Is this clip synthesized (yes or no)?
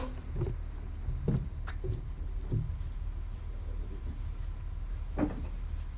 no